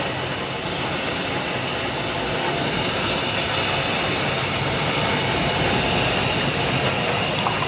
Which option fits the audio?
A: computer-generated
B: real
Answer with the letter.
B